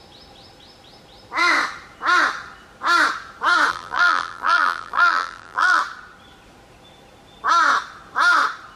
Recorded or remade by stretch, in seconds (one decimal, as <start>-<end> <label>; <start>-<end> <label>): 0.0-3.7 recorded; 3.7-5.8 remade; 5.8-8.8 recorded